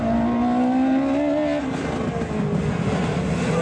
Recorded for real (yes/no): yes